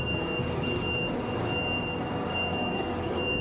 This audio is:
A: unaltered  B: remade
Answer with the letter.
B